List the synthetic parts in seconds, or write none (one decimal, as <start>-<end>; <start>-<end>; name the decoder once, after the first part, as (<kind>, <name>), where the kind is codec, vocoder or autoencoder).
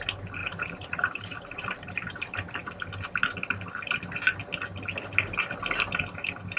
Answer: 0.4-2.2 (vocoder, BigVGAN v2)